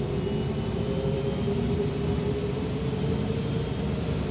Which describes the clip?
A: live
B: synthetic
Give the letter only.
A